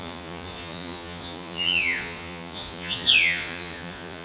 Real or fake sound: fake